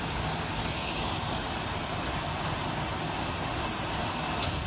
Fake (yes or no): no